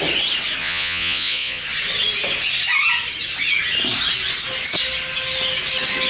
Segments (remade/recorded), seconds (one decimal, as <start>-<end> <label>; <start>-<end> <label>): 0.0-0.6 recorded; 0.6-1.6 remade; 1.6-6.1 recorded